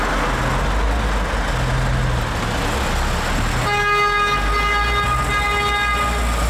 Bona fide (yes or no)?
yes